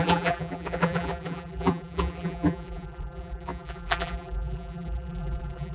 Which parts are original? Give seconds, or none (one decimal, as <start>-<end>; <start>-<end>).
none